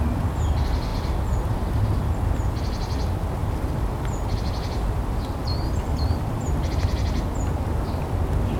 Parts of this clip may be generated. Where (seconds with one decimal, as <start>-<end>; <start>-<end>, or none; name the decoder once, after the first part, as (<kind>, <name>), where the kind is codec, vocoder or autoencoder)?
3.4-7.2 (vocoder, BigVGAN v2)